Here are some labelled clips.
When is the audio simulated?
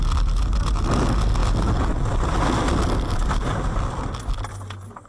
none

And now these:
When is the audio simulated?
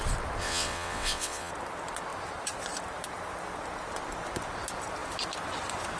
0.4-1.5 (vocoder, WaveNeXt)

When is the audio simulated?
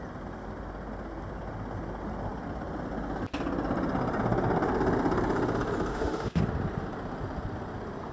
5.9-6.4 (autoencoder, DAC-VAE)